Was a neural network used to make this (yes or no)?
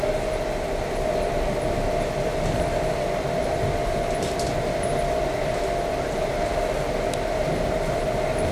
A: no